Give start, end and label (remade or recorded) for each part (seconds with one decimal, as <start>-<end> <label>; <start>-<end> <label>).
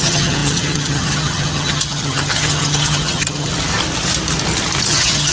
0.0-3.5 remade; 3.5-4.8 recorded; 4.8-5.3 remade